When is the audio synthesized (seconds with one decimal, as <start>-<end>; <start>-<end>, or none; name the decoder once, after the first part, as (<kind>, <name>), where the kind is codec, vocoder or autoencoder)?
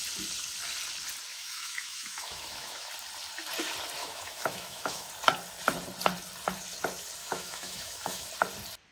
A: 1.3-2.9 (autoencoder, DAC-VAE); 4.0-5.1; 7.2-8.3